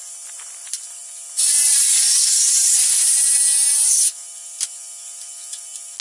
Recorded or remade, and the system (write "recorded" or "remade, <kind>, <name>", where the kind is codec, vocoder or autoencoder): recorded